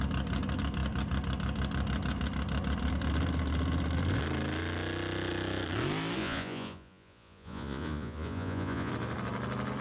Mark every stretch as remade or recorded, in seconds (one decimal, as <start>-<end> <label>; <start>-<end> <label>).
0.0-6.2 recorded; 6.2-8.9 remade; 8.9-9.8 recorded